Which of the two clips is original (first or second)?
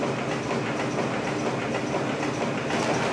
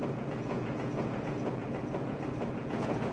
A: first